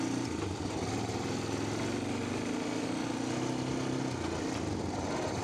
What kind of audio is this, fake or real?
real